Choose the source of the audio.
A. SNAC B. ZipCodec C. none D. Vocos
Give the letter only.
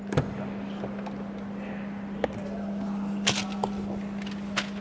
C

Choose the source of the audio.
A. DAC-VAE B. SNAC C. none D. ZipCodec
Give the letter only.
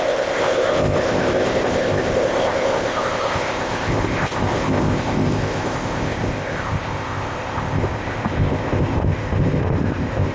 D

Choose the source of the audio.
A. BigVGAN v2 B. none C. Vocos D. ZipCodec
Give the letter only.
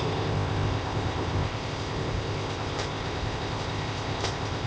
D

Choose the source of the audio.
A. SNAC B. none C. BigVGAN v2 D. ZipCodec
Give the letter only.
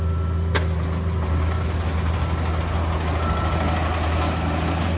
B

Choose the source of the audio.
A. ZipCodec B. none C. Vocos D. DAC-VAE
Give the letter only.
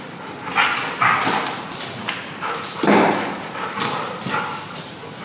B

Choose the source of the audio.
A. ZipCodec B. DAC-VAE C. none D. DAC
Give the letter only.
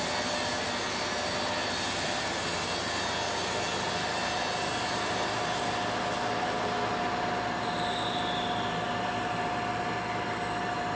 C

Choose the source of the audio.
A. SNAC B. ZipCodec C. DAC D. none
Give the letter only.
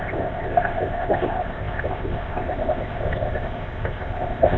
B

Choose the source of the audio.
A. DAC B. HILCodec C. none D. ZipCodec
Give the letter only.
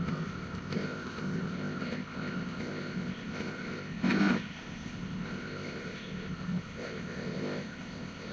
D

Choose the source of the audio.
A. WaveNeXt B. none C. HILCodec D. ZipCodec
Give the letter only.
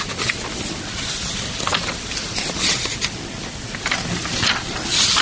B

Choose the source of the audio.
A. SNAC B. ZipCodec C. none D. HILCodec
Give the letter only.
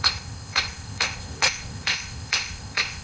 B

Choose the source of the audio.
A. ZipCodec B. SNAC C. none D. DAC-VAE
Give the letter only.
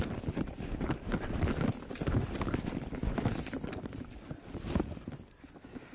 C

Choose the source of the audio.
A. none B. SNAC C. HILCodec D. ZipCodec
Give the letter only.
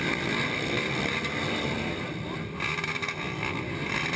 A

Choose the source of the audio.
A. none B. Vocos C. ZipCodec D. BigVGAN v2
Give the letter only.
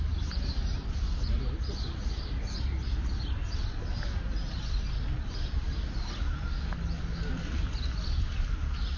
A